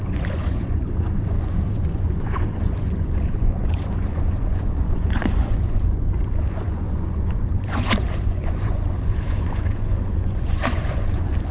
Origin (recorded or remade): remade